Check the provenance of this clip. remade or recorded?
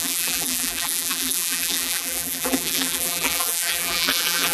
remade